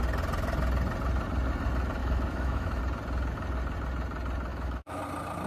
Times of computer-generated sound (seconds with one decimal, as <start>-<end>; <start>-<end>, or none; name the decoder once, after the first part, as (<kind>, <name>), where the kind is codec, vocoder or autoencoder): 2.0-2.8 (autoencoder, DAC-VAE); 4.5-5.0